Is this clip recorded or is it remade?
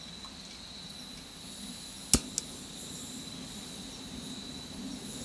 recorded